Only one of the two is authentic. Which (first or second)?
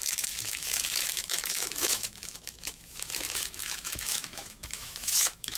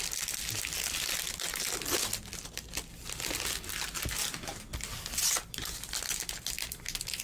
second